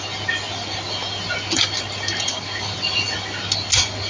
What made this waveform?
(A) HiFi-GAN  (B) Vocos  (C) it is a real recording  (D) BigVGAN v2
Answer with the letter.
C